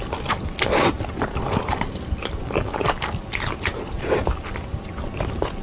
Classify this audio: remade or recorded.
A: recorded